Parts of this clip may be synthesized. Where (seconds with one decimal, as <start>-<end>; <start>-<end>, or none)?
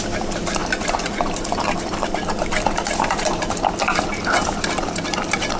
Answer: none